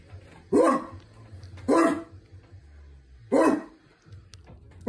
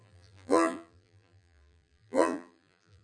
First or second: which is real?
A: first